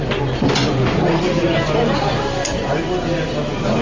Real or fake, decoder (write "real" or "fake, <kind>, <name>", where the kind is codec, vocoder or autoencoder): real